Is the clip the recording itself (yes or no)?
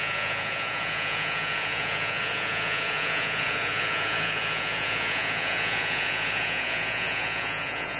no